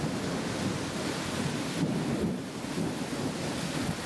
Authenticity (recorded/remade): recorded